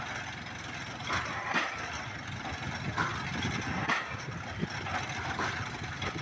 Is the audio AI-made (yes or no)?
no